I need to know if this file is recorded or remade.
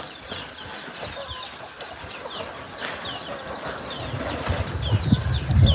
recorded